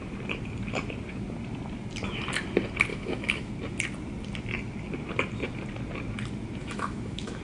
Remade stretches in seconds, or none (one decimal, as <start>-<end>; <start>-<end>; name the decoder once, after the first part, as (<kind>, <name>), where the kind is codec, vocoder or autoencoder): 2.9-3.5 (autoencoder, DAC-VAE); 6.6-7.4